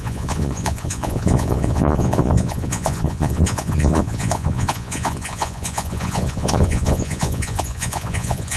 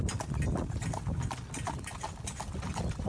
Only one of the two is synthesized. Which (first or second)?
first